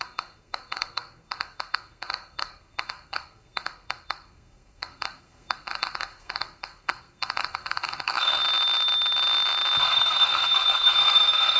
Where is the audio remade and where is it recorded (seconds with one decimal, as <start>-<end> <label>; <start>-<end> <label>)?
0.0-8.4 remade; 8.4-9.8 recorded; 9.8-11.6 remade